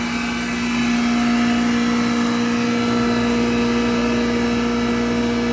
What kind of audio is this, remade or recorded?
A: recorded